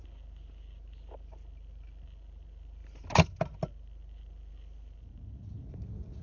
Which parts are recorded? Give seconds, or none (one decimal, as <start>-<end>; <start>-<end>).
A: 0.0-6.2